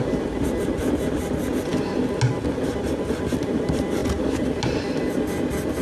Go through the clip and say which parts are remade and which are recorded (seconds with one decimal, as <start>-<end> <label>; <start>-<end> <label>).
0.0-5.8 recorded